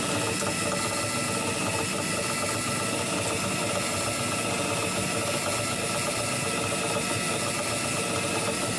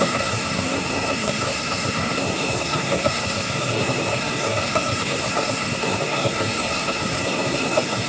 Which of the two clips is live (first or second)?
first